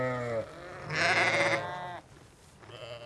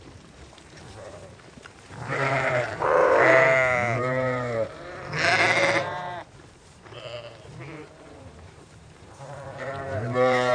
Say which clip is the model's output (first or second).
second